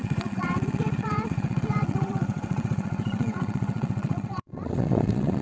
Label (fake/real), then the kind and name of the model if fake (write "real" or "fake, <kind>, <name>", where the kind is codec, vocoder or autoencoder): fake, vocoder, WaveNeXt